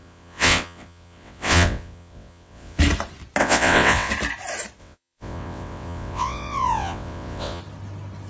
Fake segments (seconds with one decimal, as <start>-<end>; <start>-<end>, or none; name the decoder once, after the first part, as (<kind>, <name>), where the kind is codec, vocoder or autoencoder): 0.0-2.8 (vocoder, WaveNeXt); 3.4-4.1; 4.8-7.6